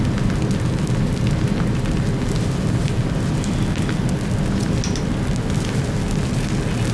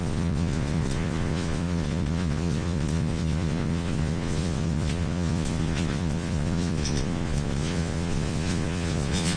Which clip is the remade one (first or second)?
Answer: second